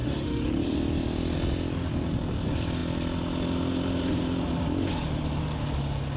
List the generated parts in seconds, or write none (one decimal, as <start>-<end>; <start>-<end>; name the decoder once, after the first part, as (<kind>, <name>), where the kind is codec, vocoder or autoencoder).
0.0-0.6 (autoencoder, DAC-VAE)